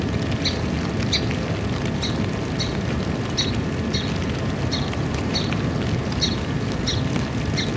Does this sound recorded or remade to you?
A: recorded